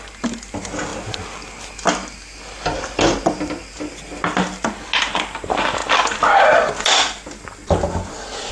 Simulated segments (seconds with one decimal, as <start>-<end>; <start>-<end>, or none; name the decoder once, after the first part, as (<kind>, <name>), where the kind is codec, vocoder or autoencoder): none